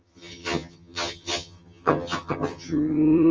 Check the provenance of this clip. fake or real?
fake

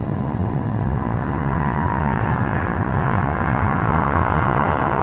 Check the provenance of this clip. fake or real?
fake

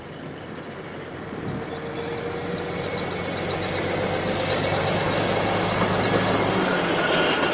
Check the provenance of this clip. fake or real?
real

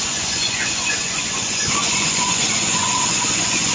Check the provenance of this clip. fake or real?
fake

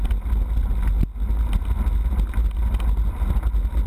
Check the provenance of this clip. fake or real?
real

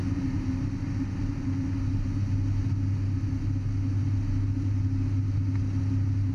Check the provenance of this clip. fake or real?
real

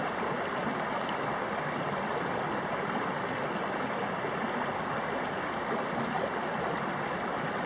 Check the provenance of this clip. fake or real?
real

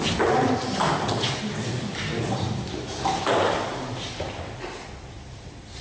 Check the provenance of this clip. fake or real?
real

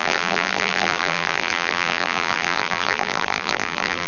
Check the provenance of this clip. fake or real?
fake